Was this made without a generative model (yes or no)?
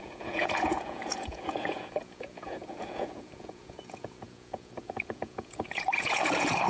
no